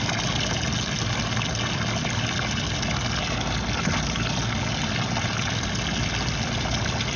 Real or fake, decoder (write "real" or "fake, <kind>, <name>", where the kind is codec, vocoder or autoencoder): real